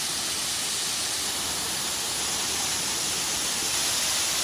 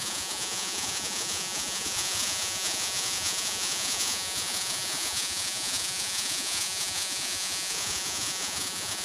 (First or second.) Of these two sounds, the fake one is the second